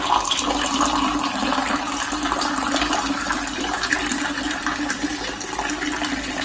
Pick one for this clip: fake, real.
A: real